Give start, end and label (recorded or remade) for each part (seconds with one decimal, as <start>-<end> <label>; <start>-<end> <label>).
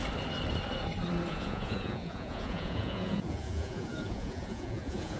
0.0-1.3 recorded; 1.3-5.2 remade